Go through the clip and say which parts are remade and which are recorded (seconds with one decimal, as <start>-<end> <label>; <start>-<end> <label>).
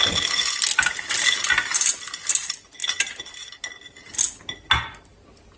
0.0-5.6 recorded